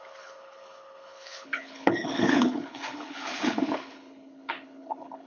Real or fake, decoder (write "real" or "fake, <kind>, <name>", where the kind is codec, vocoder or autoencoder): fake, codec, HILCodec